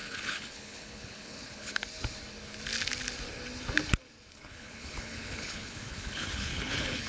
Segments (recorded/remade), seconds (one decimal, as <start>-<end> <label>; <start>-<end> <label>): 0.0-1.8 remade; 1.8-4.3 recorded; 4.3-7.1 remade

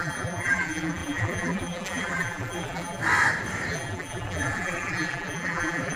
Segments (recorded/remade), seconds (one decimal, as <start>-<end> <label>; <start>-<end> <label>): 0.0-3.0 remade; 3.0-3.7 recorded; 3.7-6.0 remade

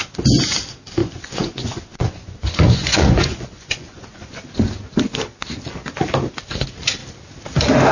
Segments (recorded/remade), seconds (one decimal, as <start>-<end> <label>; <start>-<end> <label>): 0.0-1.0 recorded; 1.0-4.5 remade; 4.5-7.9 recorded